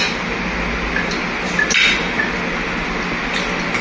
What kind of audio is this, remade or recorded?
recorded